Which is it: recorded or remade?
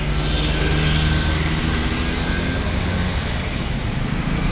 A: recorded